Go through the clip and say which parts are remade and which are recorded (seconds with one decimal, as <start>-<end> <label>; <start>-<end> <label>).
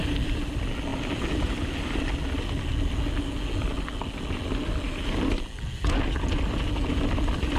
0.0-7.6 recorded